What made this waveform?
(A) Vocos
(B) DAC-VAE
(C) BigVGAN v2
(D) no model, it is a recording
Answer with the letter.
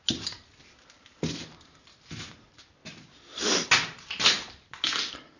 D